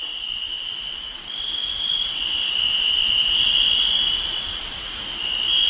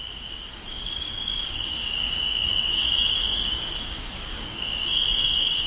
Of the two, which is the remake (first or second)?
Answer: second